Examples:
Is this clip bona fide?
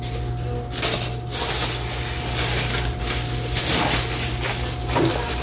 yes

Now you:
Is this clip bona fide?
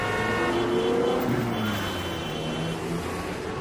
yes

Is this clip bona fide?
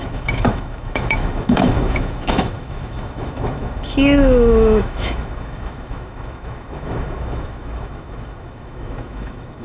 no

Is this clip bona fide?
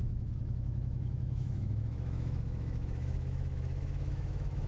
no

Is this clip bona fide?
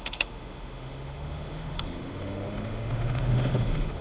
no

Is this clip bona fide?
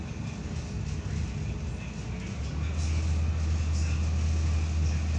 yes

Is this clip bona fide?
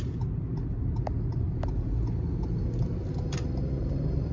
yes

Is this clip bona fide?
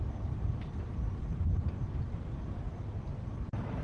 yes